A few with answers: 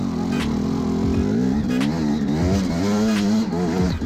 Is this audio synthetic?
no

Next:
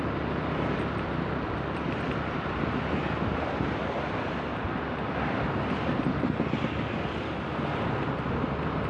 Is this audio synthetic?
yes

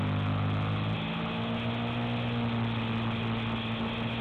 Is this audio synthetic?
no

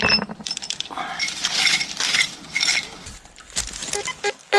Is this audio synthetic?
yes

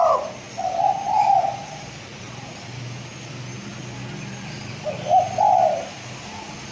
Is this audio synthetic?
no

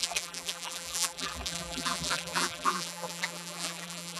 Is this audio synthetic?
yes